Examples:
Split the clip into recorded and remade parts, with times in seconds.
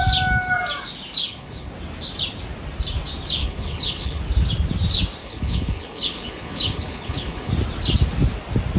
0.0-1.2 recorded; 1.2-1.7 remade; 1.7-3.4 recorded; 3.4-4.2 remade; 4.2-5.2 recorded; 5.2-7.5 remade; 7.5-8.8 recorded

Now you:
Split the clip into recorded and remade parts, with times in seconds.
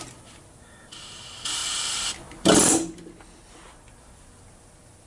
0.0-5.1 recorded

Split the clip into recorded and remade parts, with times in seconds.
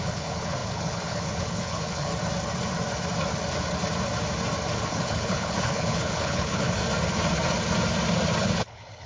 0.0-2.1 remade; 2.1-4.9 recorded; 4.9-6.8 remade; 6.8-8.4 recorded; 8.4-9.1 remade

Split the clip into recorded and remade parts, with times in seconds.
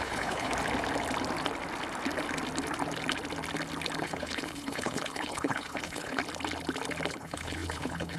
0.0-0.5 remade; 0.5-4.0 recorded; 4.0-6.2 remade; 6.2-7.1 recorded; 7.1-8.2 remade